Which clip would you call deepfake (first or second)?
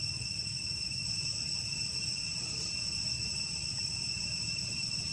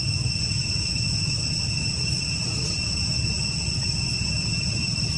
first